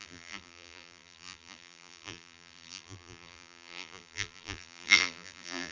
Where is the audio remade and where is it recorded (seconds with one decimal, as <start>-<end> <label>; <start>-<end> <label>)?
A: 0.0-5.7 remade